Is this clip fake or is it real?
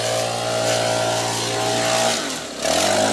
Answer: real